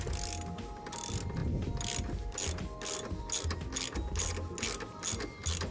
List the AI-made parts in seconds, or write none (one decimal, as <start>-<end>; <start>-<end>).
none